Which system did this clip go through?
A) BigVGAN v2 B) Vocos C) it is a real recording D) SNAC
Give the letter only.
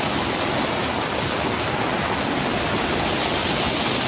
C